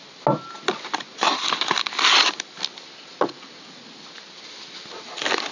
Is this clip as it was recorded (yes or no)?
yes